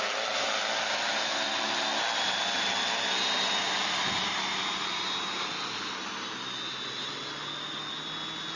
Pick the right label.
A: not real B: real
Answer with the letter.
B